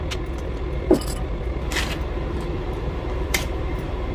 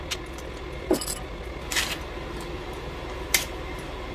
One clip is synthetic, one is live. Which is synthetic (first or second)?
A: first